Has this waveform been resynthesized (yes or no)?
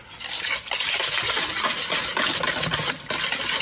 no